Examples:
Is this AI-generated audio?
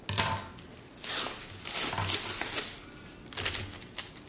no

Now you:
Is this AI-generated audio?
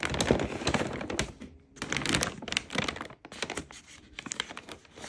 no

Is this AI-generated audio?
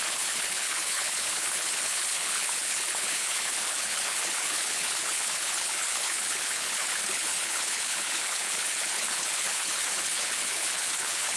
yes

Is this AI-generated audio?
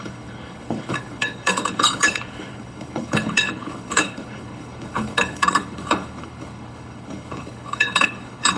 yes